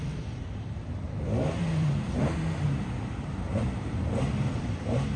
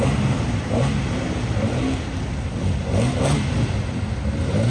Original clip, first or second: second